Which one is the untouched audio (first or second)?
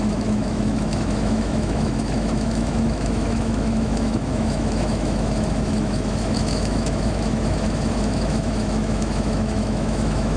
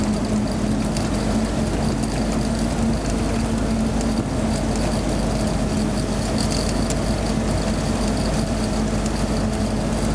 second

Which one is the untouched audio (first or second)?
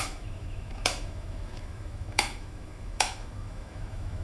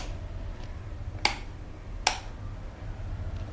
second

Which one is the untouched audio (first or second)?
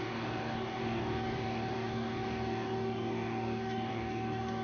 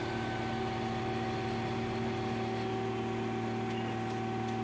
second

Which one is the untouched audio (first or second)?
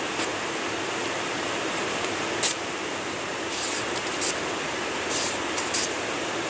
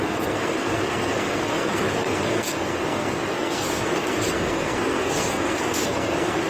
first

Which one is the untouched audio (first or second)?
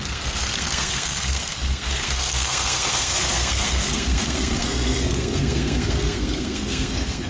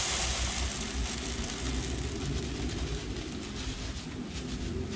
second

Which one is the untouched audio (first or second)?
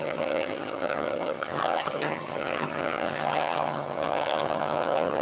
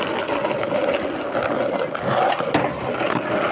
second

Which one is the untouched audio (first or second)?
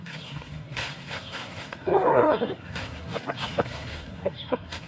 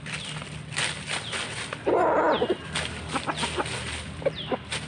second